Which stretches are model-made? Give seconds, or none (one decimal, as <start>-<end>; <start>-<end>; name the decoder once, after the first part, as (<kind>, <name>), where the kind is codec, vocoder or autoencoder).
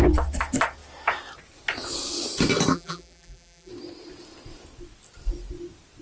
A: 2.7-3.7 (vocoder, BigVGAN v2)